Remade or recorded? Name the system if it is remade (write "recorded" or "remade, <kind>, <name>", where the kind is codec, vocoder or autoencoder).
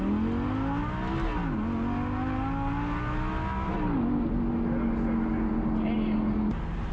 recorded